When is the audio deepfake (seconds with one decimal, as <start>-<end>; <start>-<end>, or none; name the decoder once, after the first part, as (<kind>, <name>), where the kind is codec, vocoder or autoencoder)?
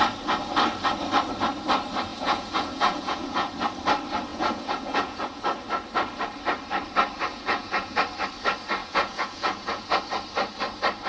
2.1-3.5 (vocoder, Vocos); 4.3-5.4; 7.3-8.0; 8.8-10.0